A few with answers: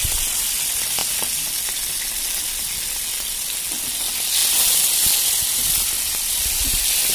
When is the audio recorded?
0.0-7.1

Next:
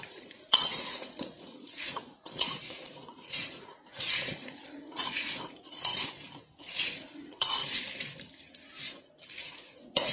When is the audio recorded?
5.9-6.6; 7.6-9.0

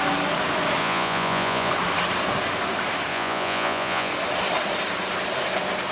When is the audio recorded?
0.0-0.8; 1.7-3.1; 4.1-5.9

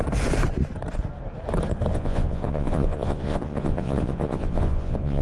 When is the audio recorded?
0.0-1.9